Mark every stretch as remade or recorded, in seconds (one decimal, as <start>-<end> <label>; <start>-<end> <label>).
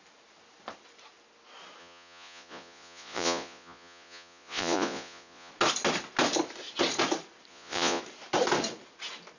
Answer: 0.0-1.8 recorded; 1.8-5.5 remade; 5.5-7.5 recorded; 7.5-8.0 remade; 8.0-9.4 recorded